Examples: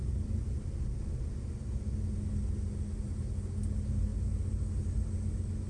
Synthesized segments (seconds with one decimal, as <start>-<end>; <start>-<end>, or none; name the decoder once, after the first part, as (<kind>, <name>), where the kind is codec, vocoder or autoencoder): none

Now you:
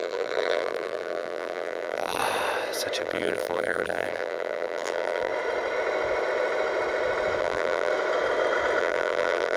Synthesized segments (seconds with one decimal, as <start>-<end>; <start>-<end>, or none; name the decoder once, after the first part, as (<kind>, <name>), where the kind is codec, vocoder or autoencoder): 0.0-2.2 (vocoder, BigVGAN v2); 3.0-5.3; 7.4-7.9; 8.8-9.6

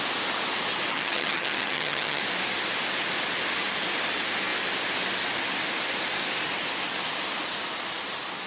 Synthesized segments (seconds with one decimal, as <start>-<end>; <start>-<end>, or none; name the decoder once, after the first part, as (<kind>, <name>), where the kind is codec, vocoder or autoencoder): 0.9-2.2 (vocoder, HiFi-GAN)

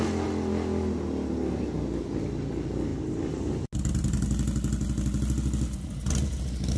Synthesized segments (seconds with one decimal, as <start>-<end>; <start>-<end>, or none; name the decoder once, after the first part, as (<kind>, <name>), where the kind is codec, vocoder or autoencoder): 2.9-3.7 (vocoder, BigVGAN v2)